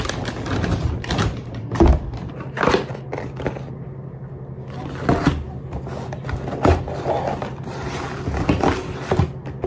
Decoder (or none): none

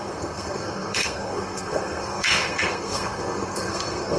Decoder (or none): codec, SNAC